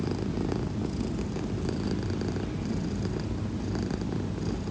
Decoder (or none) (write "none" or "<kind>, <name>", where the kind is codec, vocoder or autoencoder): none